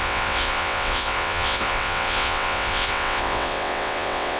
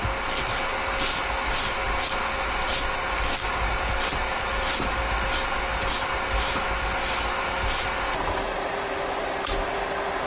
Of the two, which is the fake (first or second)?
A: first